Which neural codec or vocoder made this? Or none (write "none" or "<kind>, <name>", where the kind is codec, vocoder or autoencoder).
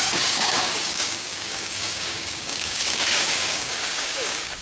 codec, DAC